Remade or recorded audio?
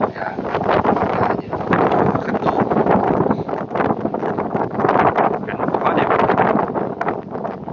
recorded